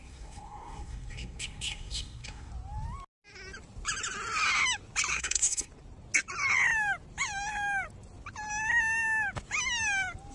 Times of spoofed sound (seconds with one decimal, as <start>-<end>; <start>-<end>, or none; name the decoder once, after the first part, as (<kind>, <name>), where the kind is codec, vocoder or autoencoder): 0.0-2.5 (codec, SNAC); 5.1-5.7

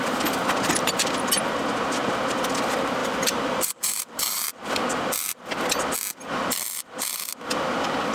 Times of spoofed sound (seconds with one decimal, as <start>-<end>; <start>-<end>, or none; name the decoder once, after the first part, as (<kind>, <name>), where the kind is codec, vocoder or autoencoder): 3.0-4.4 (vocoder, BigVGAN v2)

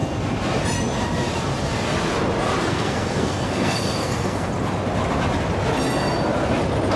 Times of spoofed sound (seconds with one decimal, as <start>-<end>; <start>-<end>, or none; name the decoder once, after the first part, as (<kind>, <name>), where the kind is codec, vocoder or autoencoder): 2.7-4.5 (codec, SNAC)